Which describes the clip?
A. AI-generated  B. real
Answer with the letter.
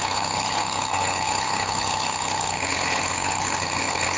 A